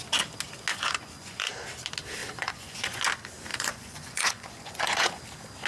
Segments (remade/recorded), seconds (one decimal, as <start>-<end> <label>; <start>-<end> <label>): 0.0-0.7 recorded; 0.7-1.5 remade; 1.5-2.2 recorded; 2.2-3.0 remade; 3.0-3.5 recorded; 3.5-5.2 remade; 5.2-5.7 recorded